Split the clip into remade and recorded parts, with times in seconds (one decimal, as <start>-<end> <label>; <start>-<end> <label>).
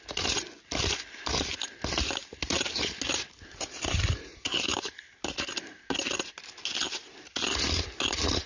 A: 0.0-4.3 recorded; 4.3-5.0 remade; 5.0-8.5 recorded